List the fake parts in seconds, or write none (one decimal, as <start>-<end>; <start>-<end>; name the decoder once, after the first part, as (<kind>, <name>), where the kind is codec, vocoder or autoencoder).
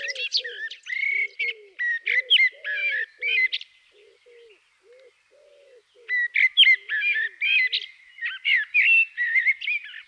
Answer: none